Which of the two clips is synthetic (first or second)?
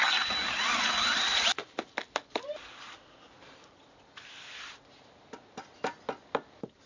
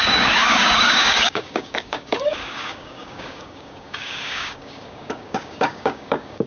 second